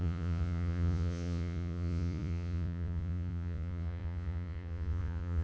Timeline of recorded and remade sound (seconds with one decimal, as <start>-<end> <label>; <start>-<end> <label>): 0.0-5.4 remade